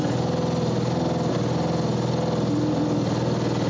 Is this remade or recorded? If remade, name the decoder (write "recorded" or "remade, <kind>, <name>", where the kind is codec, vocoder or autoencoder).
recorded